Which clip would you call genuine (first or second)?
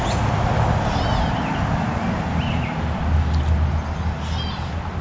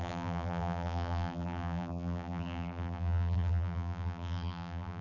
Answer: first